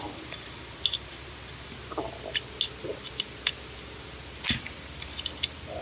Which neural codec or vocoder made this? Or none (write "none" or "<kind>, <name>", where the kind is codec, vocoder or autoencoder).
none